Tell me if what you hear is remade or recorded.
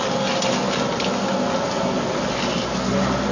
recorded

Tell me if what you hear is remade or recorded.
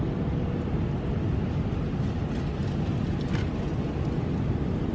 recorded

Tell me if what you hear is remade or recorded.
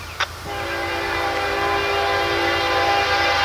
recorded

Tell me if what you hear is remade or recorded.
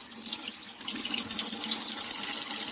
recorded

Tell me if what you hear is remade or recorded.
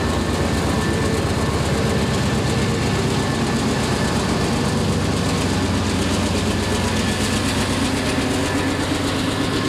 recorded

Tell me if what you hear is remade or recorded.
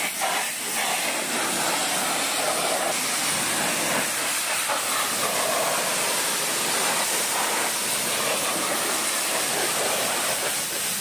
recorded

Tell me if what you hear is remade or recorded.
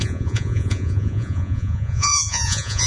remade